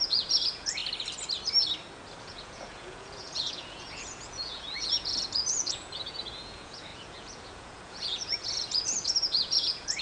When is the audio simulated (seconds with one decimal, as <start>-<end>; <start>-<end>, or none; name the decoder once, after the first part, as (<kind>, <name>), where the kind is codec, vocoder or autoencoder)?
0.0-0.8 (vocoder, Vocos); 2.2-10.0